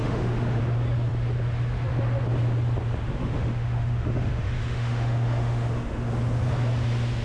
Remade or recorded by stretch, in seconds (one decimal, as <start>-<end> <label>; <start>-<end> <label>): 0.0-0.6 remade; 0.6-3.2 recorded; 3.2-6.1 remade; 6.1-7.2 recorded